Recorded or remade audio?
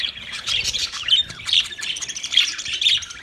remade